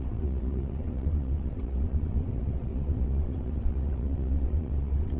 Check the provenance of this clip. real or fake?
fake